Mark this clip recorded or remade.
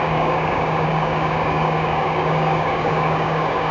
remade